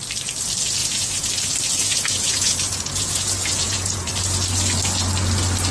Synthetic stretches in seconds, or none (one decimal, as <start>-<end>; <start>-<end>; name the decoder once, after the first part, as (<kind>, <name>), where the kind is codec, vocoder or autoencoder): 0.8-1.3 (vocoder, Vocos); 1.8-4.1